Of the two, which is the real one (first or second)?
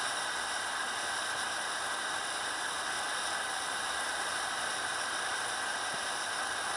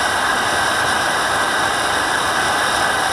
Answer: first